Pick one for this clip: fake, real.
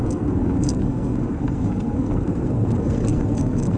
fake